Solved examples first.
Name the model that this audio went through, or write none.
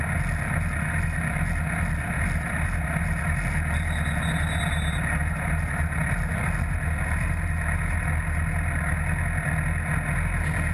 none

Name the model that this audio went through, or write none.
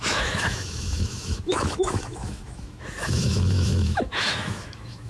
autoencoder, DAC-VAE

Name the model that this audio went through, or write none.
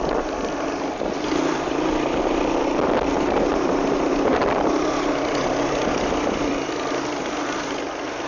vocoder, BigVGAN v2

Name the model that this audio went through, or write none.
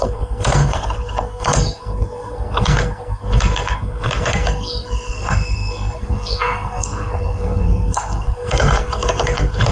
codec, SNAC